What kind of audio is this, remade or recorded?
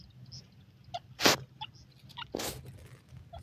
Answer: recorded